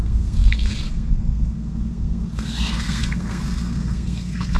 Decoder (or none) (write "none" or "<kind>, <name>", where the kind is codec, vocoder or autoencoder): codec, SNAC